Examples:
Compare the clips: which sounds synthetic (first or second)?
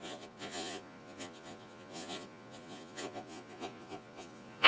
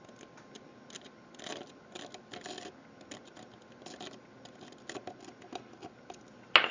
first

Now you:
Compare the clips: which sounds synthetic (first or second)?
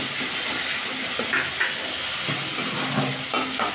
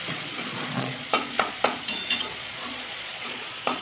second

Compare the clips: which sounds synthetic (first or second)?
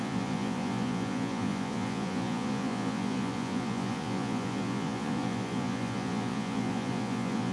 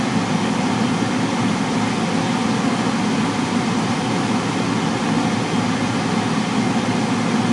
first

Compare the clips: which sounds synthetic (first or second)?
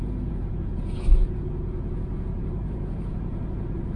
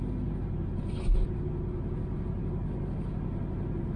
first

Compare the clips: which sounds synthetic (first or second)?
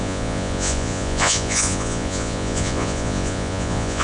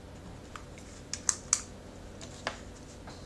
first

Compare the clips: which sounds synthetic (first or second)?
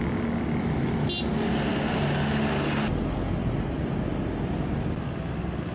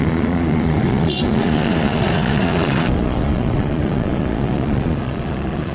second